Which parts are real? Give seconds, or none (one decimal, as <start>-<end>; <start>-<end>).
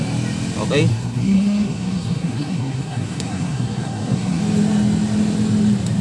0.0-0.9; 4.4-6.0